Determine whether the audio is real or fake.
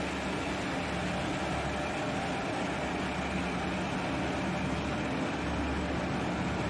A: real